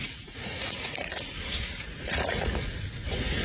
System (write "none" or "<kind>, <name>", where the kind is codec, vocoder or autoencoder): vocoder, Vocos